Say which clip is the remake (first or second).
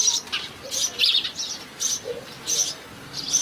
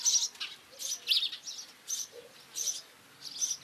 first